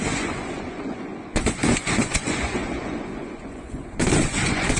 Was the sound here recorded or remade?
remade